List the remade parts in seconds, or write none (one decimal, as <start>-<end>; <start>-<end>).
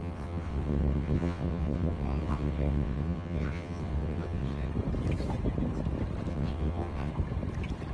0.0-4.7; 6.3-7.1